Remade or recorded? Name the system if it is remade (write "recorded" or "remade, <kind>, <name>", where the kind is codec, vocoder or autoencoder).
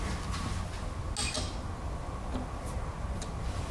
recorded